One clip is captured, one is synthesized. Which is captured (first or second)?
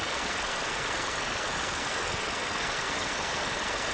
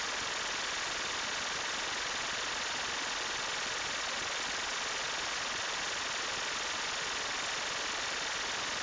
second